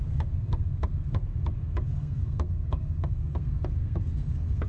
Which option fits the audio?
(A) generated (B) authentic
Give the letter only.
A